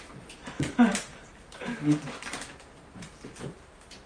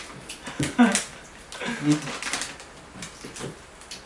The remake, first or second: first